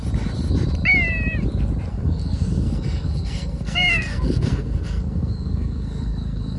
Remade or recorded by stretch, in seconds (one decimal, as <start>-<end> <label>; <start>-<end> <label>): 0.0-1.9 recorded; 1.9-6.6 remade